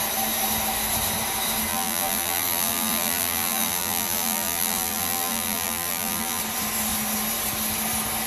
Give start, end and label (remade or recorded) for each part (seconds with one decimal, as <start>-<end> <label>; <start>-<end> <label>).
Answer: 0.0-1.7 recorded; 1.7-6.4 remade; 6.4-8.3 recorded

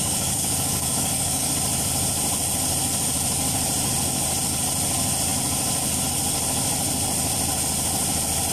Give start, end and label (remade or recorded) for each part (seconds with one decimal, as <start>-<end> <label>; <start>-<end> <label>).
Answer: 0.0-1.5 remade; 1.5-8.5 recorded

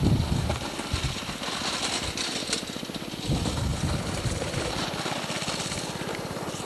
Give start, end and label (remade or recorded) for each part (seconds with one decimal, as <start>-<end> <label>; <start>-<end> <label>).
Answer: 0.0-3.7 recorded; 3.7-4.7 remade; 4.7-6.7 recorded

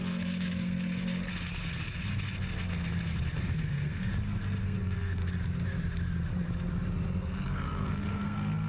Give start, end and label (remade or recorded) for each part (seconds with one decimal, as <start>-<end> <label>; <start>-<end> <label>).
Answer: 0.0-1.3 remade; 1.3-3.5 recorded; 3.5-4.1 remade; 4.1-4.6 recorded; 4.6-5.2 remade; 5.2-7.2 recorded; 7.2-8.7 remade

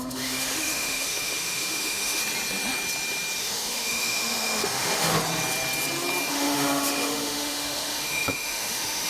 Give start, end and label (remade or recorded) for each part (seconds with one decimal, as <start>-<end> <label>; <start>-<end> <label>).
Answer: 0.0-2.2 remade; 2.2-3.4 recorded; 3.4-5.1 remade; 5.1-6.3 recorded; 6.3-9.1 remade

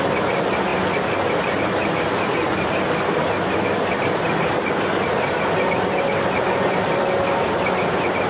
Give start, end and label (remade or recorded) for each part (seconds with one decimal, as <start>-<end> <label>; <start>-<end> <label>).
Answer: 0.0-8.3 recorded

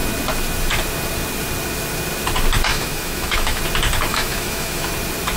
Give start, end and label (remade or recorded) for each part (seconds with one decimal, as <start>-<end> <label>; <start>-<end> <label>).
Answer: 0.0-2.7 recorded; 2.7-3.6 remade; 3.6-4.1 recorded; 4.1-4.9 remade; 4.9-5.4 recorded

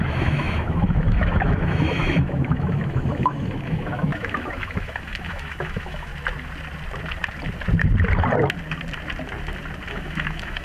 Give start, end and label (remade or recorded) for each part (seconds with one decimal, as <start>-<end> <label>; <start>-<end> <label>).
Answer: 0.0-6.1 remade; 6.1-9.9 recorded; 9.9-10.6 remade